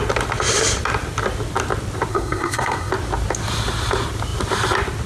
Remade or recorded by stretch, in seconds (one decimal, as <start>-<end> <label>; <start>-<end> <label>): 0.0-2.1 recorded; 2.1-2.9 remade; 2.9-5.1 recorded